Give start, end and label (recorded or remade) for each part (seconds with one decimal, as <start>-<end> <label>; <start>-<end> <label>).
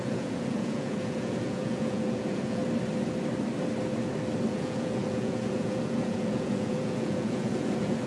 0.0-2.6 remade; 2.6-4.5 recorded; 4.5-8.1 remade